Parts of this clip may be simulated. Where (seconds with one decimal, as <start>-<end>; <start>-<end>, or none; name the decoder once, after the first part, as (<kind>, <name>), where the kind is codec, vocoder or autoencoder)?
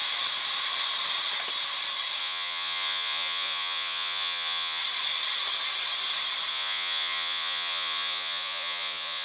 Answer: 2.2-4.8 (vocoder, Vocos); 6.5-9.2